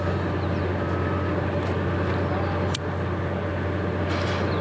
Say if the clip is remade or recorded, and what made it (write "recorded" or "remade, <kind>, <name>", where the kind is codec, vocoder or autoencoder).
recorded